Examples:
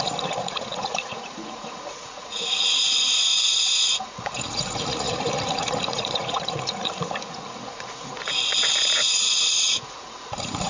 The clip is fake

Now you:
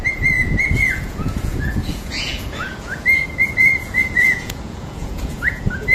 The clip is fake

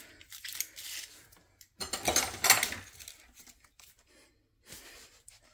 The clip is real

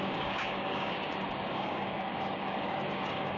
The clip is fake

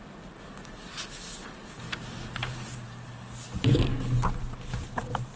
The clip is real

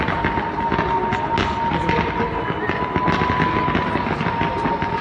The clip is real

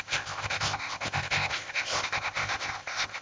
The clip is fake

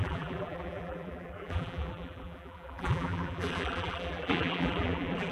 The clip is fake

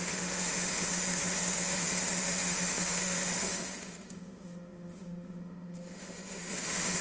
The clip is fake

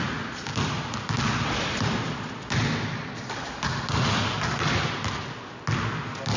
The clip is real